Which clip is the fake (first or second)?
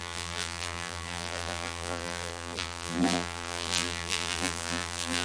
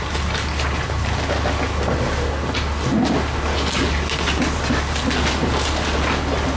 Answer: first